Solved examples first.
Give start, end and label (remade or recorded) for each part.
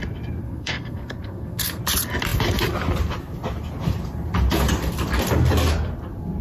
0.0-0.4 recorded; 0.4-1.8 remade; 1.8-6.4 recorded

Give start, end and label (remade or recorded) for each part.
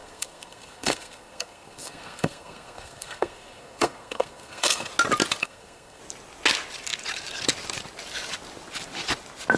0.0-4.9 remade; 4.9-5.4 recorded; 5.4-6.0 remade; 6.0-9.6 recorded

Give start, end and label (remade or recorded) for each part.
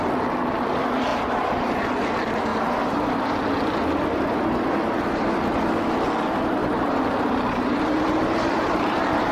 0.0-1.1 recorded; 1.1-1.8 remade; 1.8-2.5 recorded; 2.5-3.2 remade; 3.2-6.6 recorded; 6.6-9.3 remade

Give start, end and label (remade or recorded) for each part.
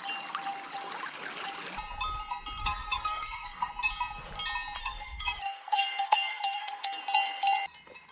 0.0-2.6 recorded; 2.6-3.7 remade; 3.7-4.8 recorded; 4.8-7.0 remade; 7.0-8.1 recorded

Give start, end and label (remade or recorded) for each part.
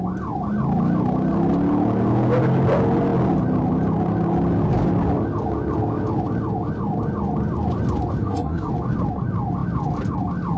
0.0-8.2 recorded; 8.2-8.7 remade; 8.7-10.6 recorded